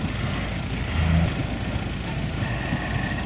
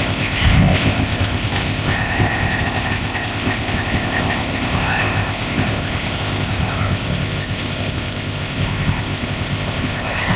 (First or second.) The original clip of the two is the first